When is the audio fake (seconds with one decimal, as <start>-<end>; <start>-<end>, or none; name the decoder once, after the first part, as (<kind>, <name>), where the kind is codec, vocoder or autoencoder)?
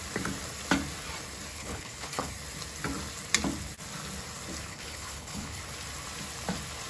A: 1.5-2.3 (codec, HILCodec); 4.7-5.6